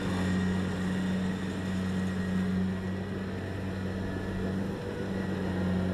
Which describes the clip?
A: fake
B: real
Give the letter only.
B